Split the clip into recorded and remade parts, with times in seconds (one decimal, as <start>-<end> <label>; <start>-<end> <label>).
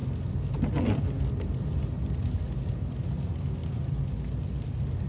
0.0-5.1 recorded